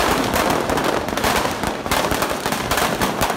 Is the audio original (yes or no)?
yes